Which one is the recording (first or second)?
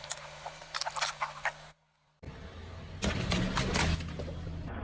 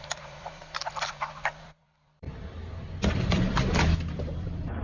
first